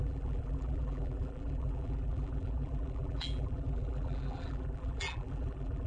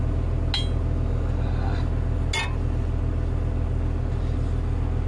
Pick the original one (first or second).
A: second